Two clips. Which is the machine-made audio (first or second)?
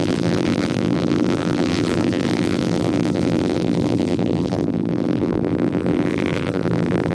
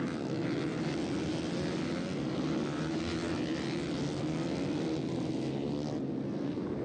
first